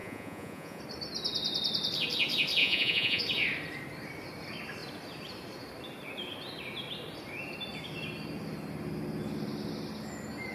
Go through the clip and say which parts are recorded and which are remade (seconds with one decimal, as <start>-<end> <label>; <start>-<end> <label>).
0.0-0.8 remade; 0.8-2.6 recorded; 2.6-3.2 remade; 3.2-10.5 recorded